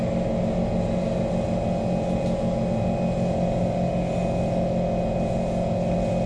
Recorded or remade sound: recorded